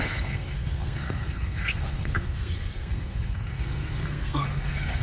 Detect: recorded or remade remade